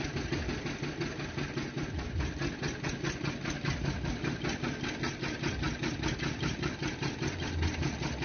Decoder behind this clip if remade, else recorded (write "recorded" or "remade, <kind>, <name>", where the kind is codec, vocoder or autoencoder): recorded